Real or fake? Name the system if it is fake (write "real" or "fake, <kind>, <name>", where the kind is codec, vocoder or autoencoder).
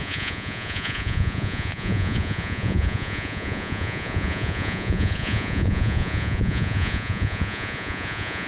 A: fake, vocoder, Vocos